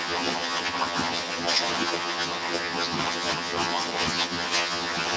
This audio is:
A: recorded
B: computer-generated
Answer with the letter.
B